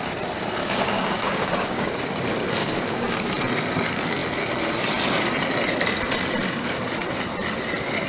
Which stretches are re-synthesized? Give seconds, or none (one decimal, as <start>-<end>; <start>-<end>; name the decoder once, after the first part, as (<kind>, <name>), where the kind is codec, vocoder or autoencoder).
0.6-1.9 (codec, DAC); 2.6-3.3